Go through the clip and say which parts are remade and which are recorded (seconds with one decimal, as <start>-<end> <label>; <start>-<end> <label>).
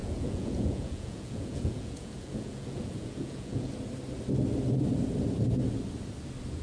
0.0-3.7 remade; 3.7-6.6 recorded